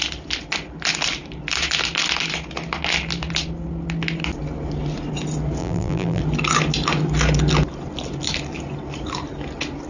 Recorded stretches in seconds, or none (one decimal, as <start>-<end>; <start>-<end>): 0.0-5.6; 6.2-9.9